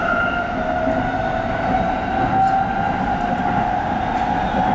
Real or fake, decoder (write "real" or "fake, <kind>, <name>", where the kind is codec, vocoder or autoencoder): real